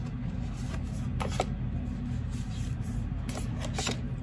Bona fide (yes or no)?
yes